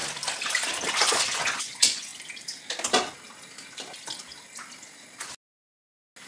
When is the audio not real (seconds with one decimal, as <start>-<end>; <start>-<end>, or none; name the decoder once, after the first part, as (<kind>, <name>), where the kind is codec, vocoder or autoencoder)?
0.9-2.1 (vocoder, Vocos)